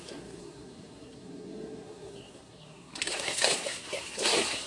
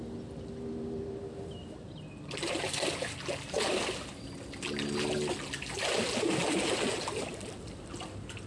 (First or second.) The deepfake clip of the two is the first